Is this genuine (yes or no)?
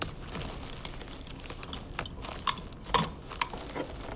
yes